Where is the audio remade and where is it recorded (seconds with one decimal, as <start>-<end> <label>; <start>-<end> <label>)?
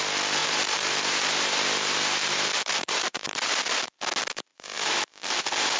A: 0.0-0.4 recorded; 0.4-3.9 remade; 3.9-4.5 recorded; 4.5-5.8 remade